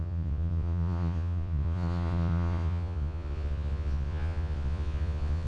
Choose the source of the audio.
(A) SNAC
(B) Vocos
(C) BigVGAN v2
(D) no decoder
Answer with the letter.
B